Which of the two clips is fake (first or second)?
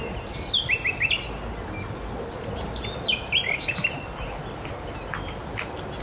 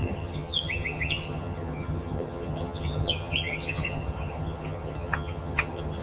second